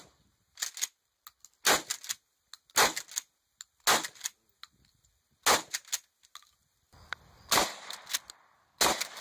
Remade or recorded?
recorded